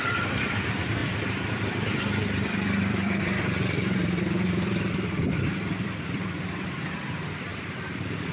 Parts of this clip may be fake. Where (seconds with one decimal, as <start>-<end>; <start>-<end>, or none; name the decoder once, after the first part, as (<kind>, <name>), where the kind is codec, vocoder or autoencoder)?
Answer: 0.0-8.3 (vocoder, BigVGAN v2)